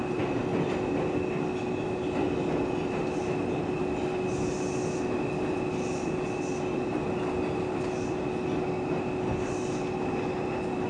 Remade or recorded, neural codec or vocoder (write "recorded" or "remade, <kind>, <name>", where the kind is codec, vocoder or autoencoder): recorded